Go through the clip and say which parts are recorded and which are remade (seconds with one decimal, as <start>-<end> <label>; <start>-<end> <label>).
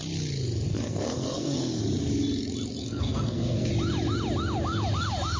0.0-0.7 recorded; 0.7-1.8 remade; 1.8-2.8 recorded; 2.8-3.7 remade; 3.7-5.4 recorded